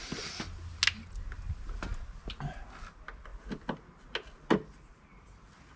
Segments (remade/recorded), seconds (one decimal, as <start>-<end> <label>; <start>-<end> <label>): 0.0-5.8 recorded

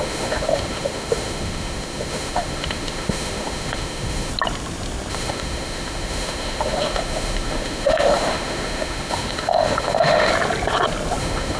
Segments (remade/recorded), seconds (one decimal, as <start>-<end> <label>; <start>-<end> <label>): 0.0-4.3 remade; 4.3-5.1 recorded; 5.1-10.3 remade; 10.3-11.2 recorded; 11.2-11.6 remade

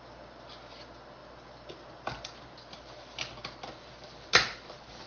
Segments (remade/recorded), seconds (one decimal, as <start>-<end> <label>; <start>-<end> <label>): 0.0-5.1 recorded